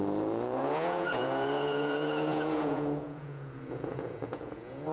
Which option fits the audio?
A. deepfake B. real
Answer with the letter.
A